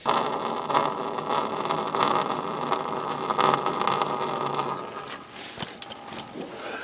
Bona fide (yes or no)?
yes